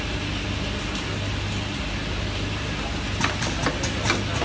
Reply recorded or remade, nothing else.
recorded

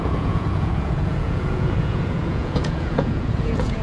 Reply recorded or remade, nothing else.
remade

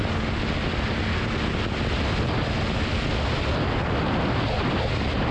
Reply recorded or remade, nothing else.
recorded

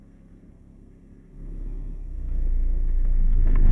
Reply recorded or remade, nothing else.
remade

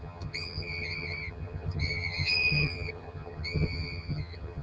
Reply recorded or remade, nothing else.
remade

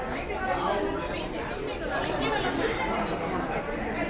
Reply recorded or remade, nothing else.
recorded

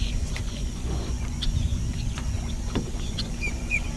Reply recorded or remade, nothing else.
remade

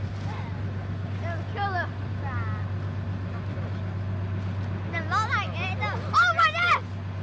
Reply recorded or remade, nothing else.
recorded